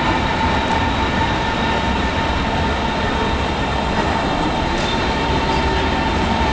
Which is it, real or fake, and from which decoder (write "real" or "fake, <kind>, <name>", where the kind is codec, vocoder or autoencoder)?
real